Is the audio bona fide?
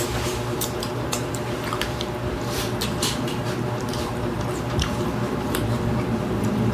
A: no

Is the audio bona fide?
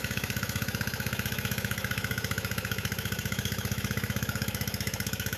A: no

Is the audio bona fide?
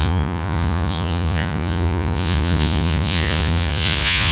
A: no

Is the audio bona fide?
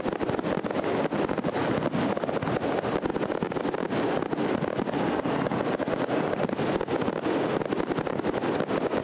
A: yes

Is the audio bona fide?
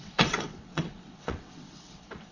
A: no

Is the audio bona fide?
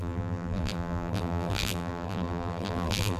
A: no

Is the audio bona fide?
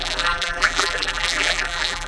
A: no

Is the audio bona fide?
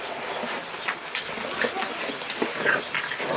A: yes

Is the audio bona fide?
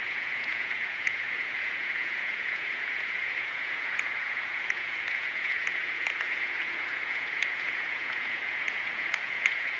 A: no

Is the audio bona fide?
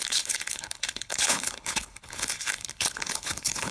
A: no